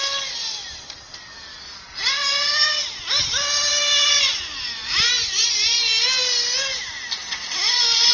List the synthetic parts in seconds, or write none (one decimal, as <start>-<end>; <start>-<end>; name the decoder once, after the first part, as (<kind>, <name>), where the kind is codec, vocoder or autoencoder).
3.7-4.2 (vocoder, BigVGAN v2); 7.2-8.1